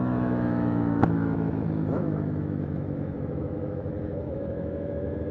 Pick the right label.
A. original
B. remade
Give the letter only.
B